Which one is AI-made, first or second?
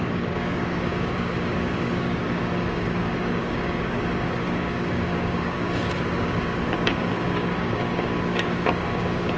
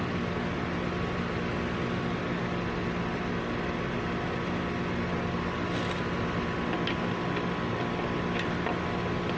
first